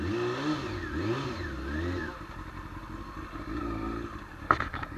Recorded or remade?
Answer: recorded